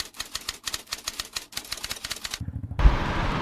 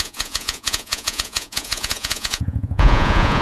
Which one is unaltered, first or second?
first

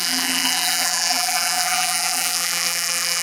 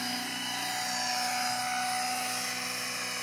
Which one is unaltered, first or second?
second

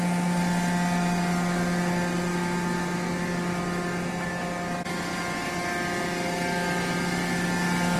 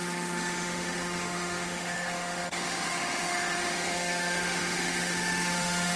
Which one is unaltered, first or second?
first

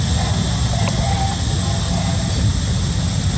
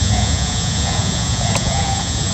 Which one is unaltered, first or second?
first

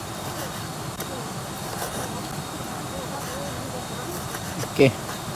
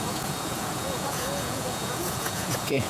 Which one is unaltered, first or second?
first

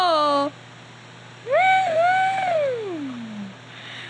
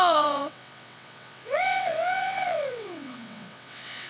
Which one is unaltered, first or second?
first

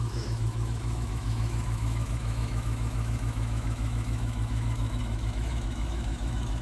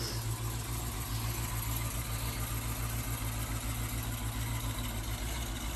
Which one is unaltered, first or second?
second